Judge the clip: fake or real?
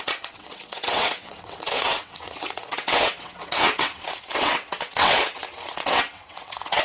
fake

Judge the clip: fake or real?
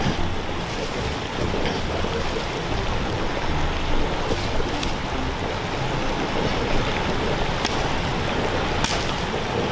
real